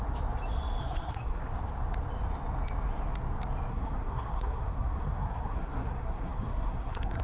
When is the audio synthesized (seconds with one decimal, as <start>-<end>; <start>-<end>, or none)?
0.8-1.4; 3.7-7.2